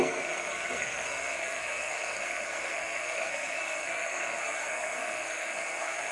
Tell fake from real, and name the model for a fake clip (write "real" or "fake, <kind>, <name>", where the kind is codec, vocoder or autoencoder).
fake, codec, SNAC